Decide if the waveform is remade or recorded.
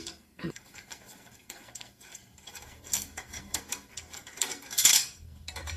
remade